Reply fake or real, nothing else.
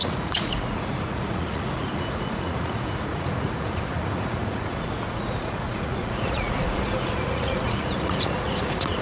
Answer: fake